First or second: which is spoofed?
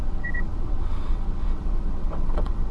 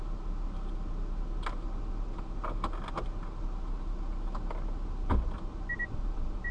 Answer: first